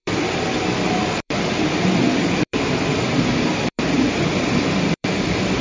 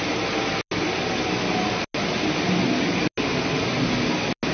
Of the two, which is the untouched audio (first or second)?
second